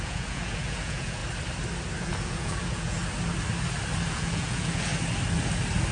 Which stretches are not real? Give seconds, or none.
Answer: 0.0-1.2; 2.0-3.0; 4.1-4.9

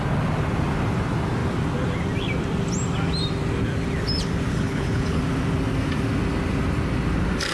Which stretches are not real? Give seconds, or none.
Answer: 4.5-5.2

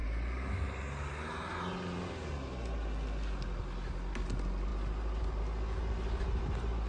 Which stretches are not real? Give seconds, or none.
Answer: none

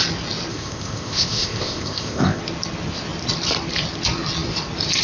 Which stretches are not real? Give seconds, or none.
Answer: 0.5-2.4

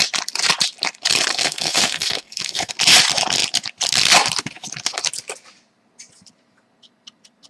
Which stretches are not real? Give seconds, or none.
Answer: 1.3-2.7

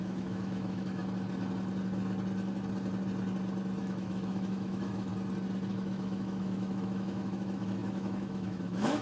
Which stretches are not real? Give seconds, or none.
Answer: 0.0-1.0; 3.8-5.1; 5.7-9.0

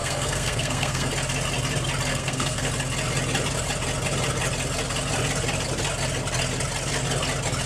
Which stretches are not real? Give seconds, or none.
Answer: 0.0-1.1; 2.1-2.7

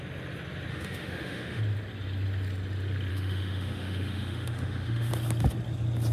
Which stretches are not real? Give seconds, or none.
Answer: 0.7-1.6; 3.1-5.1